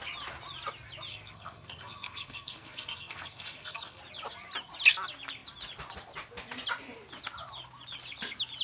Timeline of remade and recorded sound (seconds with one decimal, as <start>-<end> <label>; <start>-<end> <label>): 0.0-1.1 recorded; 1.1-4.0 remade; 4.0-8.6 recorded